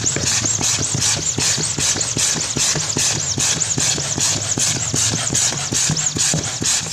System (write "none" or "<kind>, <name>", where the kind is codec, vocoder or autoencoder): none